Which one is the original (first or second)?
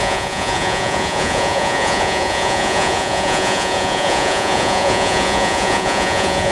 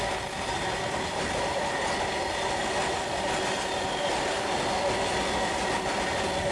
second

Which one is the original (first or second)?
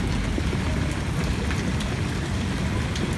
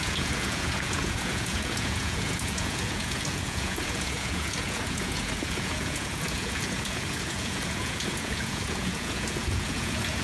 first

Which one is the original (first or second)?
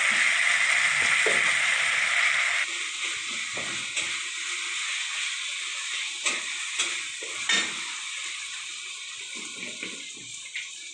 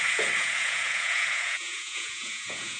first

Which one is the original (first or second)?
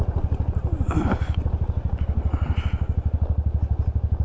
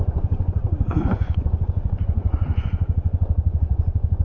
first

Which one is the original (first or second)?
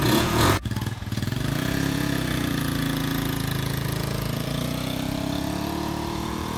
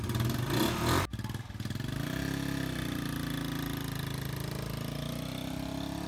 second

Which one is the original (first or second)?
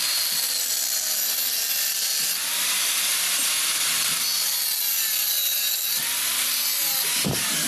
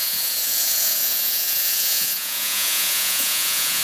first